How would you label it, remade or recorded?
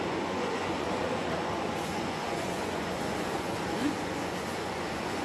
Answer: remade